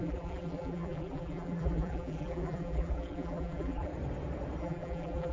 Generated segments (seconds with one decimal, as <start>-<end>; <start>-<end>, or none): 0.0-3.9; 4.6-5.3